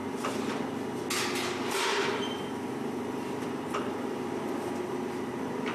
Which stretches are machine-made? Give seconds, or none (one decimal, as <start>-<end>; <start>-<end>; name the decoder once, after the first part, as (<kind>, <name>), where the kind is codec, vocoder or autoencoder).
1.9-5.3 (vocoder, BigVGAN v2)

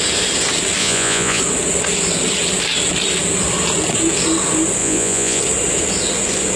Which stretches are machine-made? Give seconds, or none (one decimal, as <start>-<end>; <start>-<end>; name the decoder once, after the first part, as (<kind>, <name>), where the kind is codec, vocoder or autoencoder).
0.8-1.4 (vocoder, Vocos); 4.8-5.4

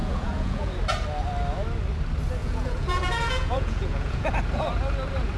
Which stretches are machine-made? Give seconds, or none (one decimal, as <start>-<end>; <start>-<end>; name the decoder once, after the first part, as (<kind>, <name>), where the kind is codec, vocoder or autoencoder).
0.0-0.7 (vocoder, Vocos); 2.4-4.3

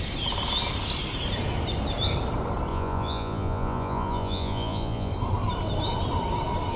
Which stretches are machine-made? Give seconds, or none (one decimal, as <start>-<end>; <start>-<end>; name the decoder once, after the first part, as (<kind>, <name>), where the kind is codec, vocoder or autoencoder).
2.7-5.1 (vocoder, Vocos)